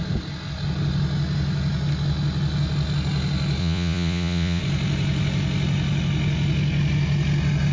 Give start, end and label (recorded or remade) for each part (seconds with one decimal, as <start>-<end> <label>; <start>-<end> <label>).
0.0-3.6 recorded; 3.6-4.6 remade; 4.6-7.7 recorded